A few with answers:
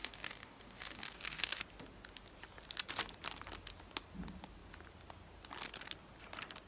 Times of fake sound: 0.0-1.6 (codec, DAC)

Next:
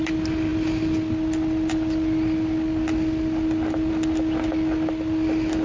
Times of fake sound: none

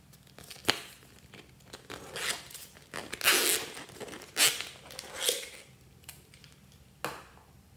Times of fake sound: none